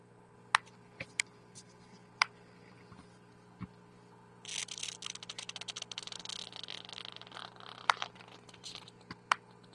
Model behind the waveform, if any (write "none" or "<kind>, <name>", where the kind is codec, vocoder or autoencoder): none